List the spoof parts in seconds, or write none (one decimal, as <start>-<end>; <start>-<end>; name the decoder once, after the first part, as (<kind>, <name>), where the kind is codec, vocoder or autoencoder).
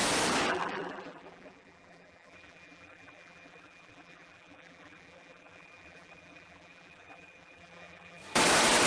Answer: 0.5-8.2 (vocoder, BigVGAN v2)